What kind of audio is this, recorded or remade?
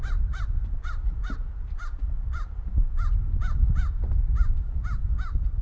recorded